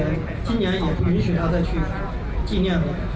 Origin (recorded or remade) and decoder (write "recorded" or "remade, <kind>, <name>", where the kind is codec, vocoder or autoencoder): recorded